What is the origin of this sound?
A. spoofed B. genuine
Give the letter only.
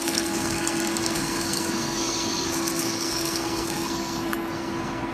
A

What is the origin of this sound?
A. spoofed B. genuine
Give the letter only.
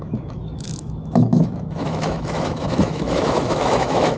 A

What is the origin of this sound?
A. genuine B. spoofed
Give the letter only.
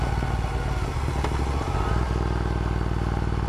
A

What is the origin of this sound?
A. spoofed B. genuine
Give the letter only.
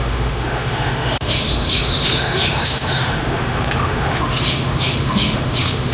A